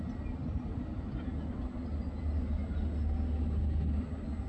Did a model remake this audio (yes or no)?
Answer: no